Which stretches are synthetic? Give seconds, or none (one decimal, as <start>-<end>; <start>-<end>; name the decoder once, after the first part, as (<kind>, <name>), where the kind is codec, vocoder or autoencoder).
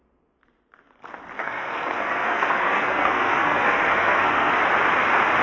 1.4-4.6 (codec, SNAC)